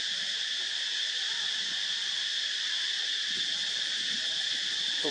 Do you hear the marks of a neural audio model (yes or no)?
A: yes